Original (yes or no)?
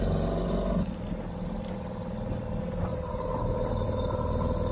yes